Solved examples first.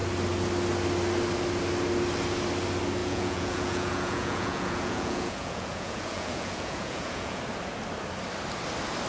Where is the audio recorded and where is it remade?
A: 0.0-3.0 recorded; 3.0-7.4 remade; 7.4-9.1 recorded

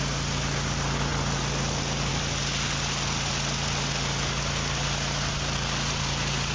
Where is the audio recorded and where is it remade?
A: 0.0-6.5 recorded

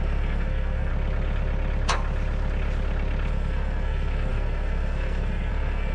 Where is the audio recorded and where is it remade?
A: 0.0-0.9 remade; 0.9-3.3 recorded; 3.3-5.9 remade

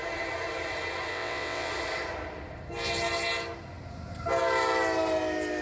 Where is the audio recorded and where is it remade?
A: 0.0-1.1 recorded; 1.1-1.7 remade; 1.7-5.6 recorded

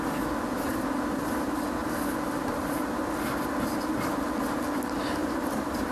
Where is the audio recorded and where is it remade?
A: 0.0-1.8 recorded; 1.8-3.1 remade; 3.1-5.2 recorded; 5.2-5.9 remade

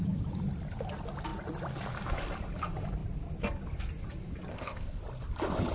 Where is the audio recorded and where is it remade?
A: 0.0-4.5 recorded; 4.5-5.0 remade; 5.0-5.7 recorded

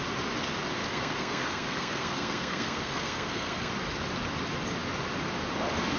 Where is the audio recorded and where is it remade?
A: 0.0-0.8 recorded; 0.8-3.7 remade; 3.7-6.0 recorded

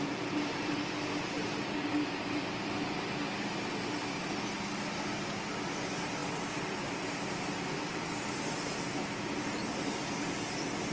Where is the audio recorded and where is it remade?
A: 0.0-10.9 recorded